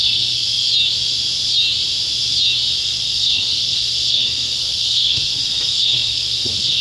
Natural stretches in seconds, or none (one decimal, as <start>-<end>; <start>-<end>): 0.7-2.8